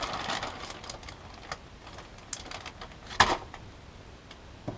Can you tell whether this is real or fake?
real